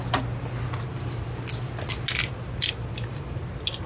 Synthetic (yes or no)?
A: no